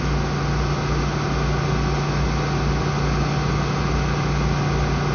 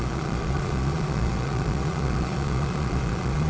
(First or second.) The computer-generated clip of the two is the second